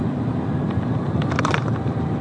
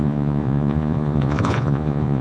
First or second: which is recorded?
first